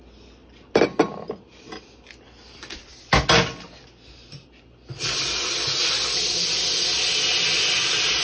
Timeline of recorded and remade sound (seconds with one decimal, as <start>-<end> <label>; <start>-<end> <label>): 0.0-8.2 recorded